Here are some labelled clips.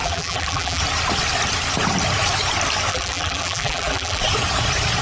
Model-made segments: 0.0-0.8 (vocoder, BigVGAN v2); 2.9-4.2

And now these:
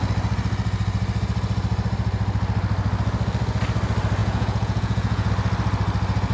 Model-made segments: 4.2-5.3 (vocoder, Vocos)

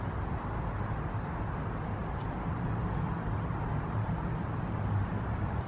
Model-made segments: 2.0-5.1 (vocoder, BigVGAN v2)

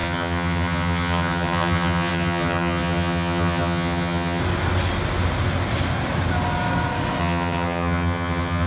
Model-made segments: 0.0-4.4 (vocoder, HiFi-GAN); 7.2-8.7

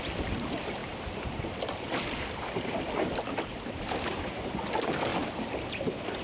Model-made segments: 0.0-5.1 (vocoder, BigVGAN v2)

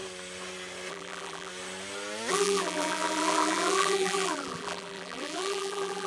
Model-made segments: 0.9-1.5 (vocoder, BigVGAN v2); 2.3-6.1

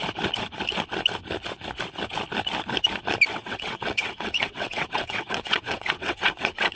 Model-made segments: 3.3-6.8 (vocoder, WaveNeXt)